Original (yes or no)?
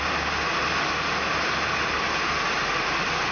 yes